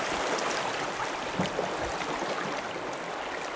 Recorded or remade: recorded